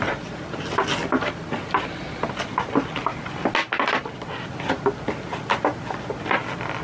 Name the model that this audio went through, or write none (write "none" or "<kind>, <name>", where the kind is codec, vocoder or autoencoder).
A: none